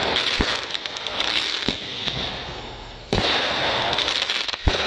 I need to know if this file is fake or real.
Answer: fake